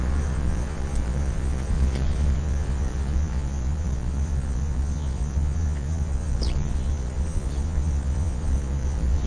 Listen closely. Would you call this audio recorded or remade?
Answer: remade